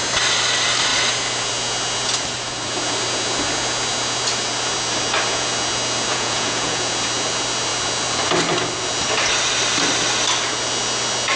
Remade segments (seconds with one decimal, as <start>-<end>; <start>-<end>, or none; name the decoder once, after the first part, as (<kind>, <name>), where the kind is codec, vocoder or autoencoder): 6.1-6.8 (vocoder, Vocos)